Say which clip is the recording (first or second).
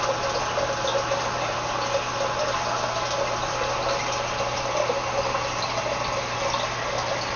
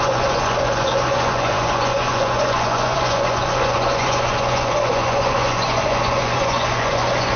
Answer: first